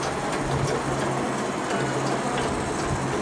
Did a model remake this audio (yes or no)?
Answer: no